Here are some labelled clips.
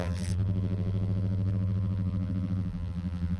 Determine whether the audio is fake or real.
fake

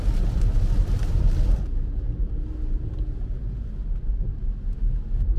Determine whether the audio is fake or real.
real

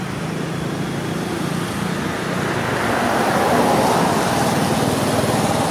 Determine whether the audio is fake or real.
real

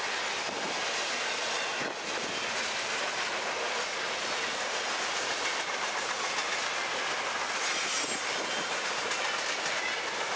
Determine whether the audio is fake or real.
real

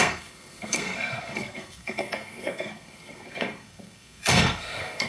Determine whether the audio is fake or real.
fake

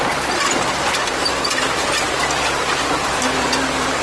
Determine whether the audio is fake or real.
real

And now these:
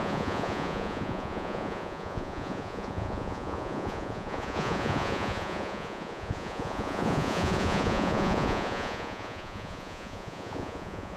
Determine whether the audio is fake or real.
fake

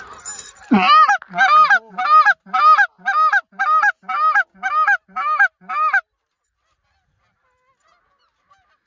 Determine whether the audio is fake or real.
real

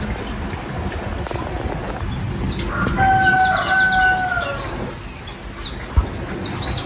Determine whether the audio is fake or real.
real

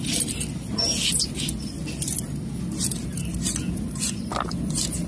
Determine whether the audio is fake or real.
real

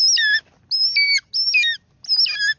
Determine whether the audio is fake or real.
real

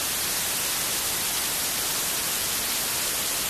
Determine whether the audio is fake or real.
real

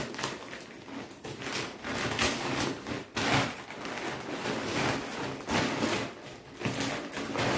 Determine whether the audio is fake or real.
real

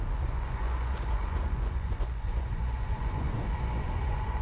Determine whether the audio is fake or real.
fake